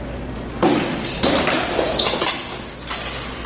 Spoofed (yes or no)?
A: no